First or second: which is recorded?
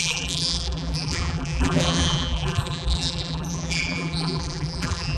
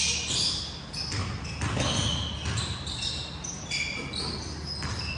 second